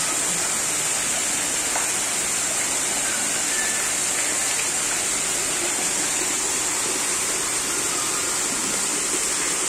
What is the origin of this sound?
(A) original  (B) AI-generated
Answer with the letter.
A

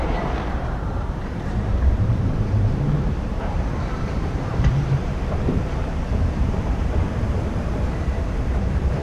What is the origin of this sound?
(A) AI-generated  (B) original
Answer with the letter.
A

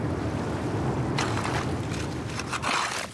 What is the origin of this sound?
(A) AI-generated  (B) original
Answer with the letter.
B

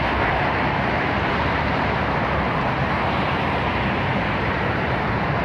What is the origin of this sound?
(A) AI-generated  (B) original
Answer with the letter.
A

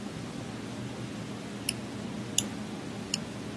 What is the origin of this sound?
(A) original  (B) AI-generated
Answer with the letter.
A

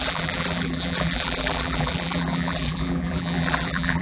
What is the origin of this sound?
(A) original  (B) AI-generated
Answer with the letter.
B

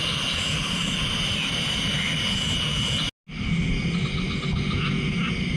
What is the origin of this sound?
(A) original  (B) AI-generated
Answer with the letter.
A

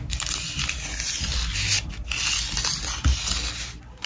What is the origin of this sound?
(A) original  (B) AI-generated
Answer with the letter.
A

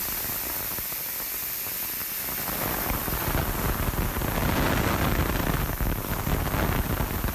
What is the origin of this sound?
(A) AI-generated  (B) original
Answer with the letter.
B